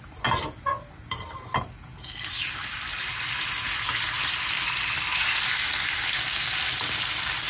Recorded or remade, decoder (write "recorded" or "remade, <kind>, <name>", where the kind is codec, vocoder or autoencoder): recorded